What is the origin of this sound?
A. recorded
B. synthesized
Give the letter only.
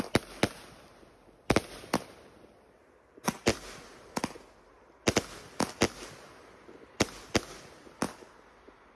A